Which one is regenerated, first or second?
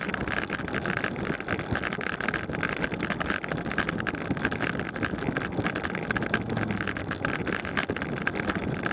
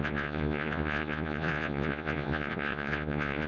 second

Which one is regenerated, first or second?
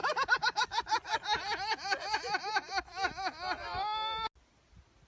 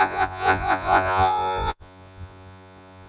second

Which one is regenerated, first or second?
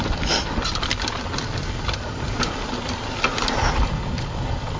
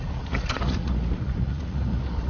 second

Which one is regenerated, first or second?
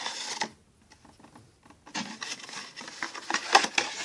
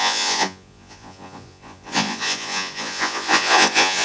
second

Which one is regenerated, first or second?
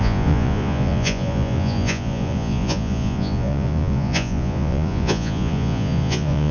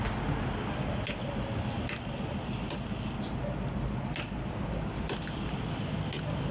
first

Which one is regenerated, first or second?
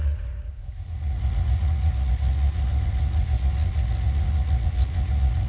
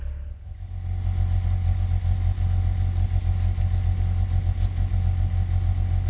first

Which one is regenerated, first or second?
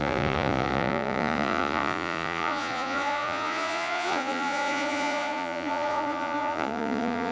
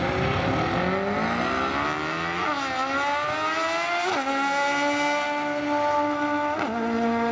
first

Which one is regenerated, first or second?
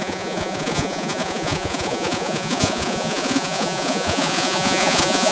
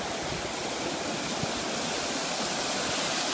first